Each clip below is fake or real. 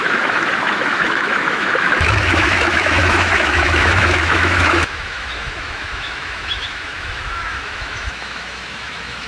fake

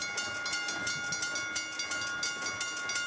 real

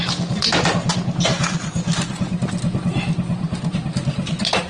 real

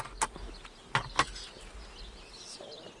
real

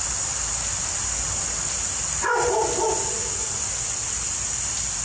real